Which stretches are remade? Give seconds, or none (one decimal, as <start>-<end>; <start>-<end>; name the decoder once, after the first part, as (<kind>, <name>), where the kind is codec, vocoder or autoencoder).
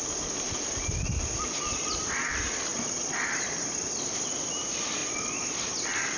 1.7-2.3 (vocoder, Vocos); 2.7-4.1; 5.0-5.7